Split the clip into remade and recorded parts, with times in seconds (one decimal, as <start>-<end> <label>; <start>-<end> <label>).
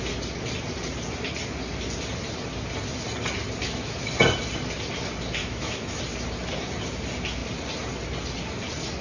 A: 0.0-3.6 recorded; 3.6-4.1 remade; 4.1-5.4 recorded; 5.4-6.0 remade; 6.0-9.0 recorded